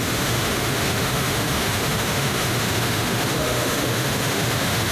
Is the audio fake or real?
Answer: fake